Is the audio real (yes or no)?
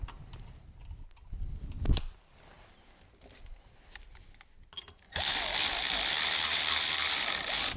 yes